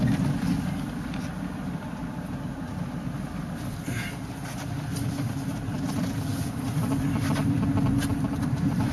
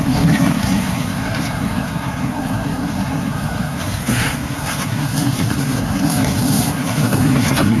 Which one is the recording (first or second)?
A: first